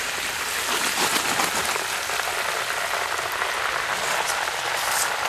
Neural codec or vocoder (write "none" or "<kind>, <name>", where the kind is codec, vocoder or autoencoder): none